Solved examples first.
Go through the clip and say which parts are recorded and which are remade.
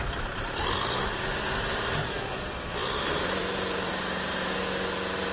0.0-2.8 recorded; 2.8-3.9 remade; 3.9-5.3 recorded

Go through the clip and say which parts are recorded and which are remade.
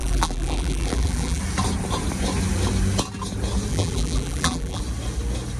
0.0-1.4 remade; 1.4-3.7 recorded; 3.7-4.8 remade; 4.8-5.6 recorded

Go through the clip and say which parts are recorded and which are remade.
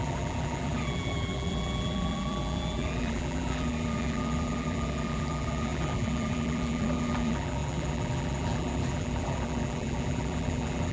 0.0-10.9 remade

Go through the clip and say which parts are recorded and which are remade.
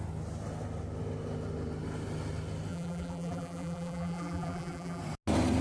0.0-2.7 recorded; 2.7-5.0 remade; 5.0-5.6 recorded